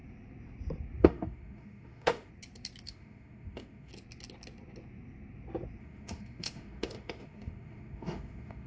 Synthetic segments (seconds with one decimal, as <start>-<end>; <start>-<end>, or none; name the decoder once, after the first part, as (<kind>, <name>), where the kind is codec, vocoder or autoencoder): 1.0-2.3 (autoencoder, DAC-VAE); 2.9-3.9; 5.8-8.7